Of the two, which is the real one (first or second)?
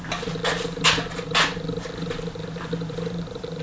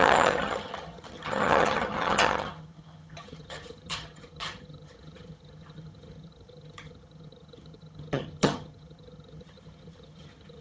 first